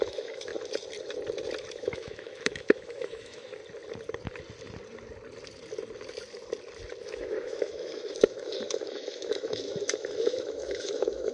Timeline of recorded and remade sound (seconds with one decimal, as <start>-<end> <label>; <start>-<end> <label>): 0.0-0.5 remade; 0.5-1.7 recorded; 1.7-3.6 remade; 3.6-7.0 recorded; 7.0-11.3 remade